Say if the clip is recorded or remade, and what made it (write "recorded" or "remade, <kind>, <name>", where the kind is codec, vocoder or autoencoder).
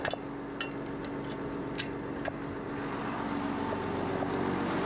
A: recorded